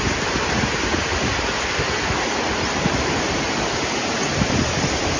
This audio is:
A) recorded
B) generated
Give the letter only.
A